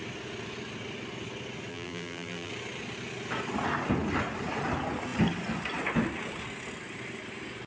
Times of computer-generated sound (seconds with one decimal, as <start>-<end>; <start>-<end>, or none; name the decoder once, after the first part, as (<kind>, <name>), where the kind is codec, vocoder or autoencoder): 1.7-2.5 (vocoder, BigVGAN v2)